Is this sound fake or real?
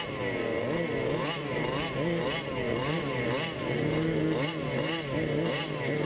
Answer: real